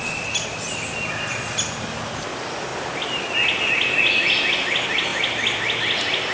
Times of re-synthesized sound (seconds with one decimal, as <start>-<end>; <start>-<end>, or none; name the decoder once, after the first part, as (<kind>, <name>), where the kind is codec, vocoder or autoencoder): none